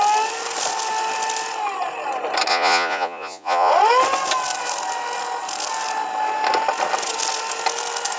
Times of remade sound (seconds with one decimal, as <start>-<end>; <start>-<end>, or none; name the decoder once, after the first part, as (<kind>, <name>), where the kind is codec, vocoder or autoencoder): 2.5-3.7 (vocoder, Vocos)